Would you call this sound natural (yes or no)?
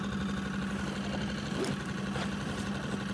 yes